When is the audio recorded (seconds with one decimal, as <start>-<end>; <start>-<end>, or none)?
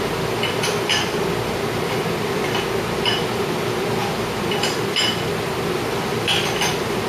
0.0-7.1